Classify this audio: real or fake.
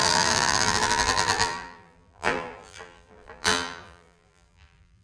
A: fake